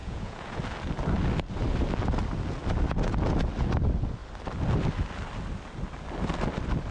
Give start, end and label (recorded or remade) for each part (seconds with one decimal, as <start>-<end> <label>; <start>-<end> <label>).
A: 0.0-0.6 remade; 0.6-6.9 recorded